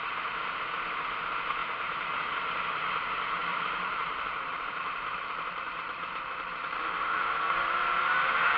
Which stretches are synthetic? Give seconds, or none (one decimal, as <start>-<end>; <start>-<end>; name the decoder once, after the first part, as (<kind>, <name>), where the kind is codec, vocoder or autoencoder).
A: 1.6-2.2 (vocoder, BigVGAN v2); 3.4-8.1